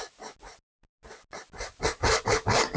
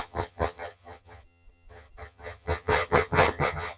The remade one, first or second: second